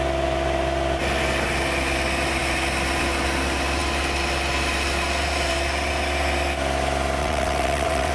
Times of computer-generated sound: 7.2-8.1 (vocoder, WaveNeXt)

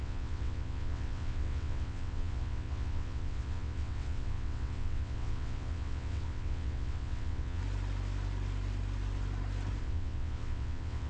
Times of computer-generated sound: 0.0-7.6 (vocoder, WaveNeXt); 9.8-11.1

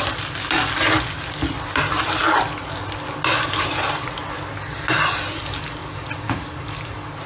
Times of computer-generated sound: none